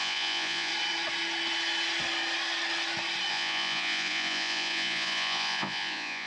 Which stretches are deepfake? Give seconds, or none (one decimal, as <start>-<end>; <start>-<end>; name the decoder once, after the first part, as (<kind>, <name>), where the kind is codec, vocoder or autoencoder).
0.0-0.7 (vocoder, Vocos); 3.3-6.3